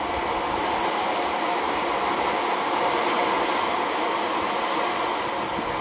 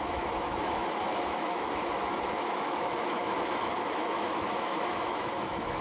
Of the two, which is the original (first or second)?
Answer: first